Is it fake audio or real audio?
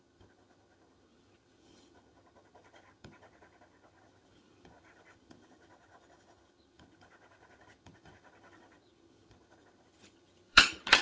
fake